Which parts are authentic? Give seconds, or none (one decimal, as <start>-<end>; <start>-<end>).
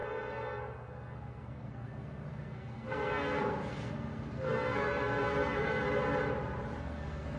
5.8-6.8